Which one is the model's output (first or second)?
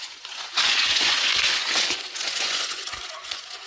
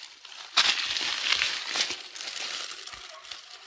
first